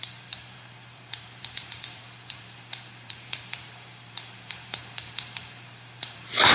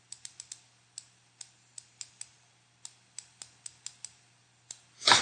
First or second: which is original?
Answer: second